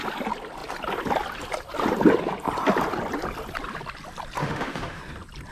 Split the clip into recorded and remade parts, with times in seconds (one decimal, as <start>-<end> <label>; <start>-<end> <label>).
0.0-4.4 recorded; 4.4-5.0 remade; 5.0-5.5 recorded